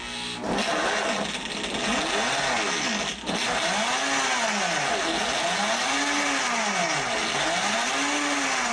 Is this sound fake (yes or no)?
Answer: no